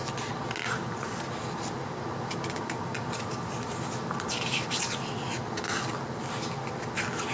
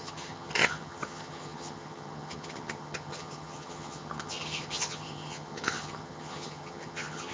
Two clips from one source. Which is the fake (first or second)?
second